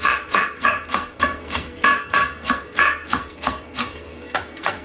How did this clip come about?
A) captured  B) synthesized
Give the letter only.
B